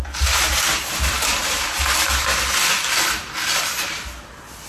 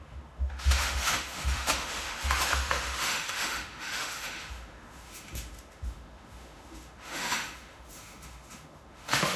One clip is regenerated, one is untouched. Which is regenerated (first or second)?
second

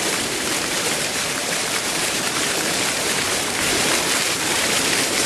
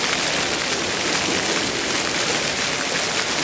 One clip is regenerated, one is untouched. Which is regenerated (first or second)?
first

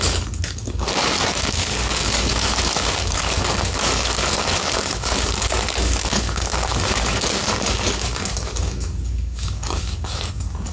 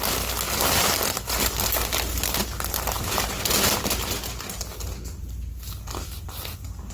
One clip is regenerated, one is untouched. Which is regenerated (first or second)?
first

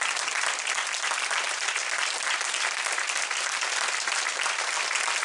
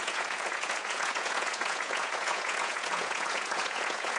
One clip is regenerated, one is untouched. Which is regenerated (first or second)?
second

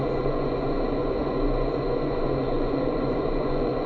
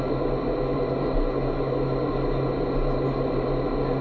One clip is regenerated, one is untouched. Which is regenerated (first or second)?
first